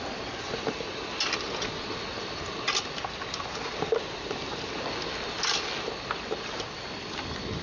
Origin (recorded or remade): recorded